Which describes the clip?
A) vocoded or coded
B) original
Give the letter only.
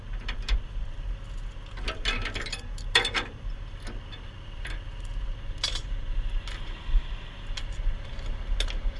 B